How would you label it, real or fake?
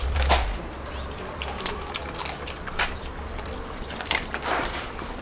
fake